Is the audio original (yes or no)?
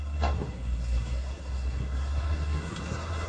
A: no